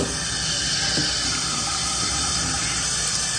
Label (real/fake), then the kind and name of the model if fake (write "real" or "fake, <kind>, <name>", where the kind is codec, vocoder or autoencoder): real